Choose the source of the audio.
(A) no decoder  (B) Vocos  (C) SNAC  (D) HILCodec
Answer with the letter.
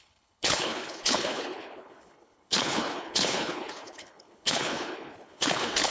D